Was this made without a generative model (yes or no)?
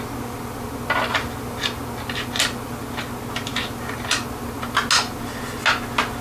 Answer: yes